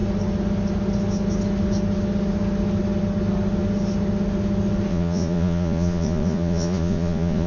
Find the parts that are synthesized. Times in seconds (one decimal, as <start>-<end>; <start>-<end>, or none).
4.9-7.5